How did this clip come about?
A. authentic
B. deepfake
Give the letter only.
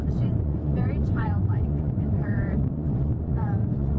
B